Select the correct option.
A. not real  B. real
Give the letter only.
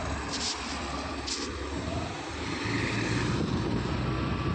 B